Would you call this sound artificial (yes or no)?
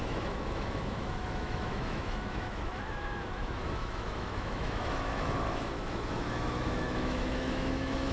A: yes